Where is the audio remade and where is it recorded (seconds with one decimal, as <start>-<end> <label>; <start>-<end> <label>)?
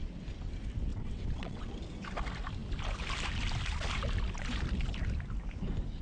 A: 0.0-0.9 recorded; 0.9-1.7 remade; 1.7-6.0 recorded